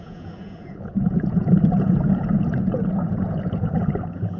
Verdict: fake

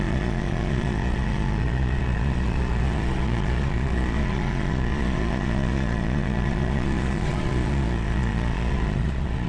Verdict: fake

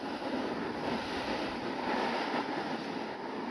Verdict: real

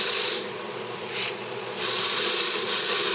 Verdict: fake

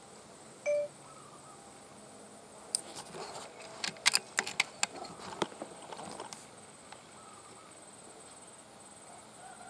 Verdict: real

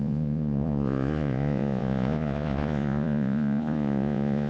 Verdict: fake